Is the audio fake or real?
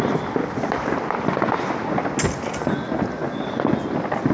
real